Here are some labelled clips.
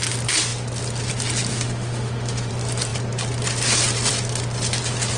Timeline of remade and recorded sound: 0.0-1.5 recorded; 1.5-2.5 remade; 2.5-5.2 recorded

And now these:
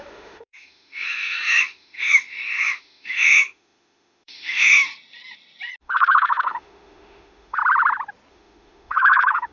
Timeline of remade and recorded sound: 0.0-4.9 remade; 4.9-5.8 recorded; 5.8-7.6 remade; 7.6-8.3 recorded; 8.3-9.5 remade

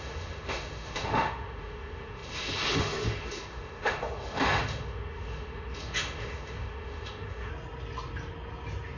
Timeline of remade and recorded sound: 0.0-7.5 remade; 7.5-9.0 recorded